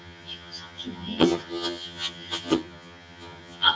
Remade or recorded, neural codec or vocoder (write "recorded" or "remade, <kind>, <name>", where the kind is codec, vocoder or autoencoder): remade, vocoder, HiFi-GAN